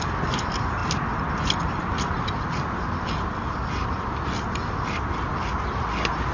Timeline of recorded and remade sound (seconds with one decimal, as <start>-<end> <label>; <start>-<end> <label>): 0.0-6.3 recorded